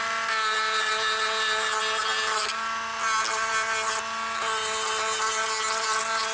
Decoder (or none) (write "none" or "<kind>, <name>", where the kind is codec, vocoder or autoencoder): none